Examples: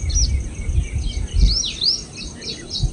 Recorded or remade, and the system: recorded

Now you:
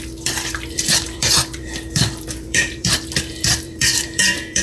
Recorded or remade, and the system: remade, vocoder, BigVGAN v2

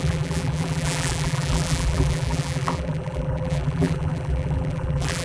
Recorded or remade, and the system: remade, vocoder, BigVGAN v2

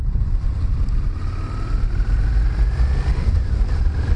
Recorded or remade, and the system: recorded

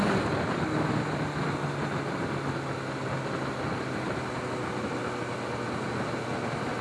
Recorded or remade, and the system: recorded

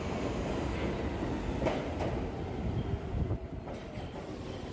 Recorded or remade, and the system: recorded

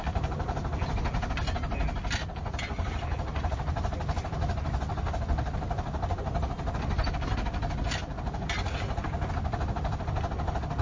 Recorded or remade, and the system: recorded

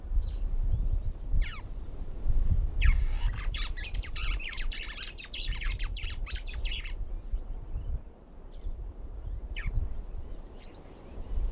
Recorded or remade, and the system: remade, vocoder, BigVGAN v2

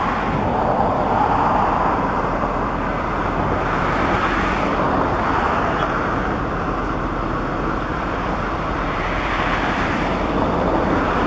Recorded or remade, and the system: remade, vocoder, BigVGAN v2